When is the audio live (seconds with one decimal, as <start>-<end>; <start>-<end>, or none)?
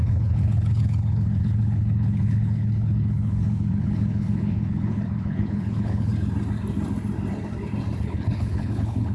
6.1-8.0